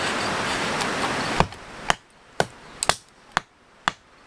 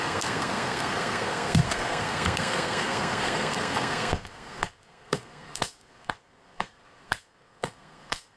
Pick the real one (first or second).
first